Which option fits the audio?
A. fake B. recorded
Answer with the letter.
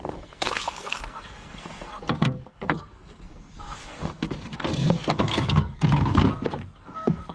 A